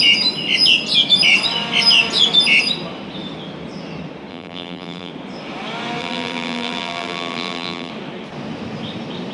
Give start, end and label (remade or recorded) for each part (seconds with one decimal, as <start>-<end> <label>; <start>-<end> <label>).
0.0-4.3 recorded; 4.3-5.1 remade; 5.1-6.0 recorded; 6.0-7.9 remade; 7.9-9.3 recorded